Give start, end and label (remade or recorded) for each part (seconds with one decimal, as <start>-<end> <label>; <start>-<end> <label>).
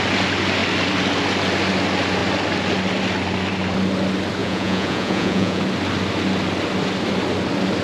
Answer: 0.0-4.4 recorded; 4.4-5.6 remade; 5.6-7.8 recorded